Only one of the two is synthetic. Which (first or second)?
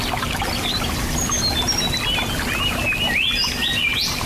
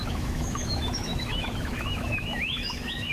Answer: second